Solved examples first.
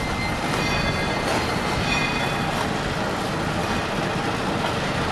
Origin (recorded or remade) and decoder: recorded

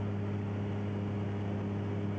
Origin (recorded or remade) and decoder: recorded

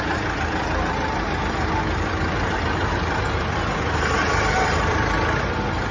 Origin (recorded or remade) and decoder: recorded